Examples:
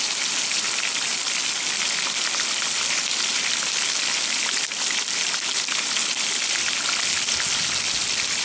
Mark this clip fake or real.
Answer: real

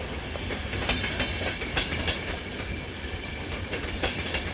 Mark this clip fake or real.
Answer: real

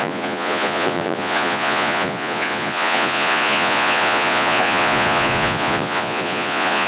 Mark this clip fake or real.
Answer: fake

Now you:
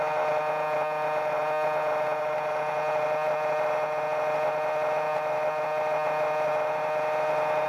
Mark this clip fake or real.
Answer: real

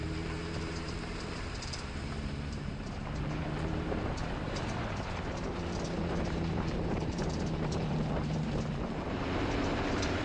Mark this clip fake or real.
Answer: fake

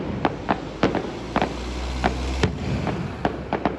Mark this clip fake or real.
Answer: real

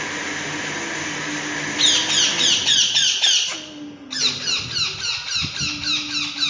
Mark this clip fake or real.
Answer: real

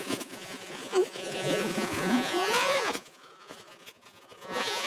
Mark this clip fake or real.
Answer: fake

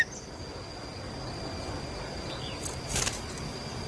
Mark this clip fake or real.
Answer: real